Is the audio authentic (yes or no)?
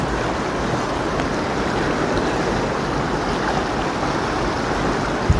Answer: yes